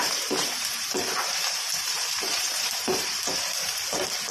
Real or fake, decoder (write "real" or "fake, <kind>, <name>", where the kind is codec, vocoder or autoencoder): fake, vocoder, BigVGAN v2